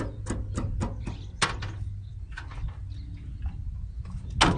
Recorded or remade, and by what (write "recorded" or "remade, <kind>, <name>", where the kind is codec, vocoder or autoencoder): recorded